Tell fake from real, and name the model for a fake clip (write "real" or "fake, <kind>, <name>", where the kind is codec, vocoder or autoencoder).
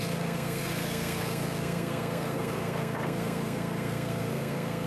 fake, codec, SNAC